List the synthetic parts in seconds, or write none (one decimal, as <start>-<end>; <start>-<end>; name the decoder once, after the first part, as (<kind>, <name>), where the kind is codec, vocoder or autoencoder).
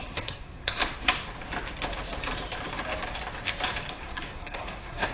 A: 0.0-0.8 (codec, SNAC); 3.9-5.1